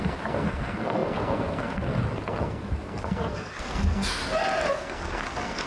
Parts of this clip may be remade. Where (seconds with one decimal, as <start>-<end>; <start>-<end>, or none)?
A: 0.0-4.2; 4.7-5.7